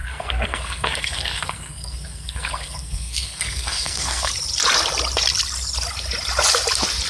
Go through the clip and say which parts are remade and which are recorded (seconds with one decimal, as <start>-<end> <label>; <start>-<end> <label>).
0.0-4.3 remade; 4.3-7.1 recorded